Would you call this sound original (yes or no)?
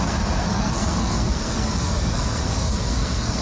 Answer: no